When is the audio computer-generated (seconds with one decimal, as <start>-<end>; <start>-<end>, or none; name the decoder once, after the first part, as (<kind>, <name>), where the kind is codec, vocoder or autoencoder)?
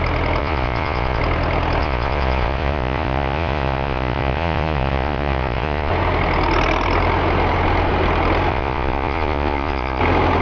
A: 0.4-1.2 (vocoder, Vocos); 1.8-5.9; 8.5-10.0